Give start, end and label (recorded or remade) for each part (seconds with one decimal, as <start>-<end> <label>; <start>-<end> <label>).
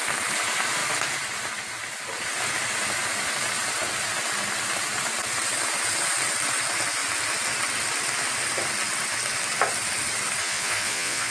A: 0.0-10.4 recorded; 10.4-11.3 remade